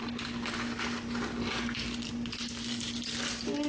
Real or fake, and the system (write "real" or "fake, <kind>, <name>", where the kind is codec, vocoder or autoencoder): real